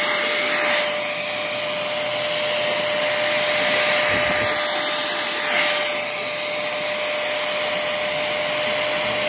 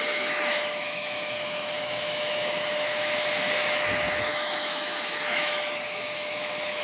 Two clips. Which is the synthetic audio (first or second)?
second